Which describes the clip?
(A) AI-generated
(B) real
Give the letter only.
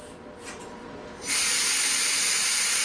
B